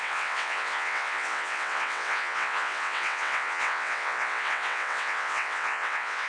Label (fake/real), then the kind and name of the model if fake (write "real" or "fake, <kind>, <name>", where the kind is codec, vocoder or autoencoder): fake, vocoder, WaveNeXt